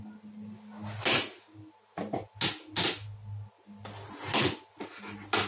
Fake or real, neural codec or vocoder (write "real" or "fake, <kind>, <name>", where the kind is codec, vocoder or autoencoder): real